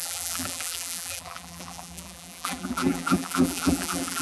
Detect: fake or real fake